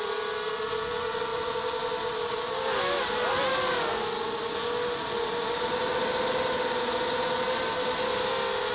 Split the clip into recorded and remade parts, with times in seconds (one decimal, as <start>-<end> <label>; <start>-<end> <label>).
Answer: 0.0-8.7 recorded